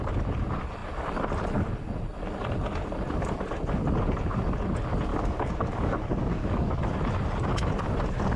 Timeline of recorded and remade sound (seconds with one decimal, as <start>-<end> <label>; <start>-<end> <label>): 0.0-5.1 recorded; 5.1-6.9 remade; 6.9-8.4 recorded